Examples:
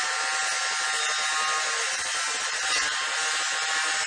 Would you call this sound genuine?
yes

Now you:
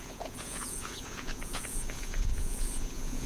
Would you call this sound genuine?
no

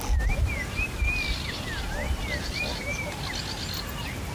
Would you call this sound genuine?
yes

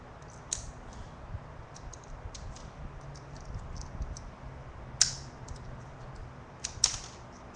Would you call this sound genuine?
yes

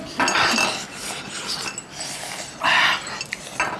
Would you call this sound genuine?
yes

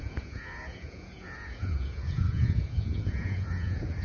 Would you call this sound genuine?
no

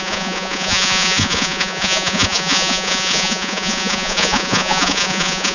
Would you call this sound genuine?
no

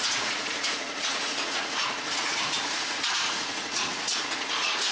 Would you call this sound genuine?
no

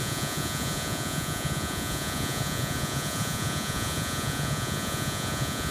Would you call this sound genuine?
no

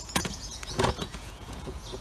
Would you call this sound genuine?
no